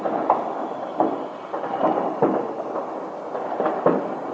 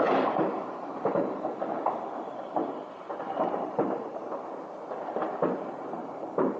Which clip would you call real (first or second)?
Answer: first